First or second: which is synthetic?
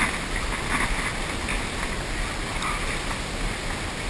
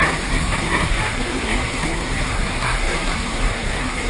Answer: second